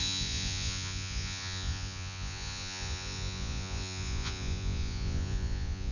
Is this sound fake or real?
fake